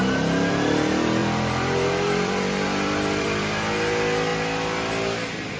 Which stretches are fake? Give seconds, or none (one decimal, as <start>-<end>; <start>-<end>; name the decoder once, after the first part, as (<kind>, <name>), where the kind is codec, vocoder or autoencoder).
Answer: 1.2-3.4 (vocoder, BigVGAN v2)